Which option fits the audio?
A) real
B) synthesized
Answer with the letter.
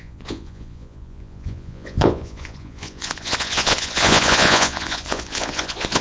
B